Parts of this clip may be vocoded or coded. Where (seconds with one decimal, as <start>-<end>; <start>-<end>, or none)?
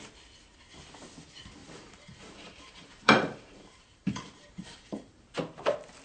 1.6-5.2